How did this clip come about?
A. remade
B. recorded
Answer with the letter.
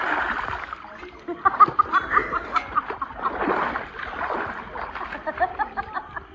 B